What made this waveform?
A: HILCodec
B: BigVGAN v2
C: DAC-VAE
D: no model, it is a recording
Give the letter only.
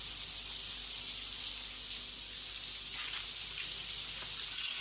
D